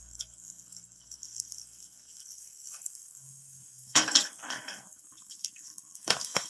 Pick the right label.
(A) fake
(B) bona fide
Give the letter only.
A